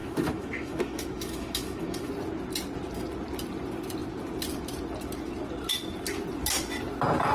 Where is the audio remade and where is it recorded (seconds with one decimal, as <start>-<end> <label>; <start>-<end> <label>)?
0.0-2.1 remade; 2.1-7.3 recorded